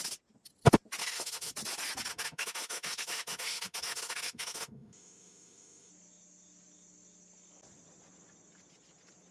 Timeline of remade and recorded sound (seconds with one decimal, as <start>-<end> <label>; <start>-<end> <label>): 0.0-1.0 recorded; 1.0-1.5 remade; 1.5-2.1 recorded; 2.1-5.9 remade; 5.9-9.3 recorded